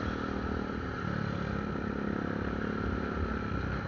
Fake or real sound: real